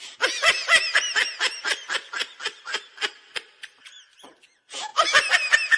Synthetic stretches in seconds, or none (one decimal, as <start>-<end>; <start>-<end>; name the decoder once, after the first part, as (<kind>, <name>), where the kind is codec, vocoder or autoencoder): 0.0-0.6 (vocoder, BigVGAN v2); 1.7-4.9